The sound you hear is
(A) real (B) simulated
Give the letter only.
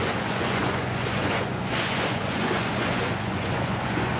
B